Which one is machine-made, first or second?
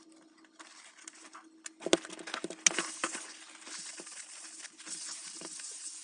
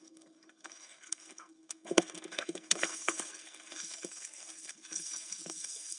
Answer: second